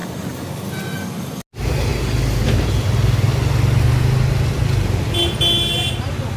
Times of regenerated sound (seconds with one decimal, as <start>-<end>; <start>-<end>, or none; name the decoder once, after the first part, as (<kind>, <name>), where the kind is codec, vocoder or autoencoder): 0.0-0.8 (vocoder, BigVGAN v2)